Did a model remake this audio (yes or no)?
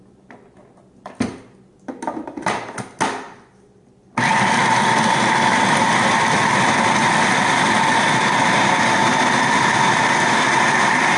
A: no